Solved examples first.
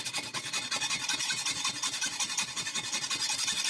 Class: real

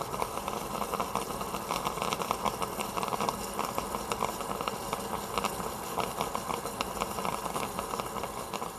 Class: real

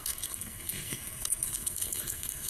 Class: fake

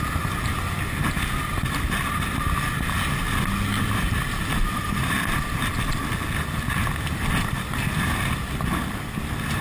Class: real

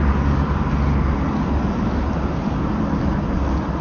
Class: real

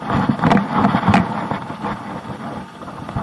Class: fake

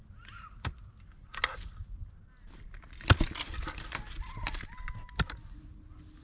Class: real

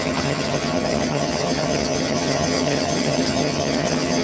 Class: fake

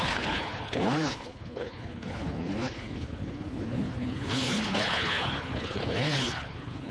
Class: fake